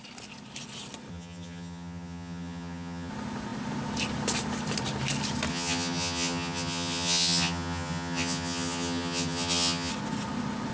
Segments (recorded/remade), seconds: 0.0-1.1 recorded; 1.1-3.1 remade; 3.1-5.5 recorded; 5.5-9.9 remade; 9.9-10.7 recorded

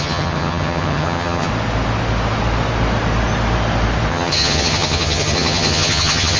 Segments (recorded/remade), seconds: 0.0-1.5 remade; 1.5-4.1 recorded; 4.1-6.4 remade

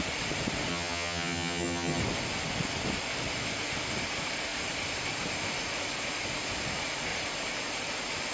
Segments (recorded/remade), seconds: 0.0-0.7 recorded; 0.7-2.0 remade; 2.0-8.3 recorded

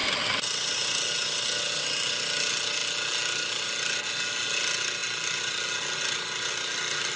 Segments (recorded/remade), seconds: 0.0-7.2 recorded

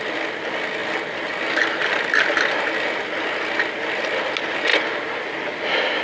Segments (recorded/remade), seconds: 0.0-6.0 recorded

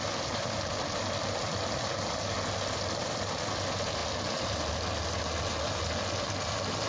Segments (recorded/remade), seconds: 0.0-6.9 recorded

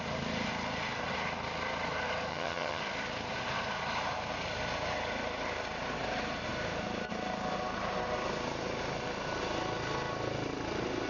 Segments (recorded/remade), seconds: 0.0-2.3 recorded; 2.3-2.8 remade; 2.8-11.1 recorded

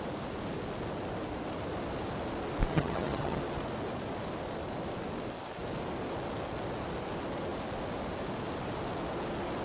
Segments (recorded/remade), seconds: 0.0-2.7 recorded; 2.7-3.4 remade; 3.4-9.6 recorded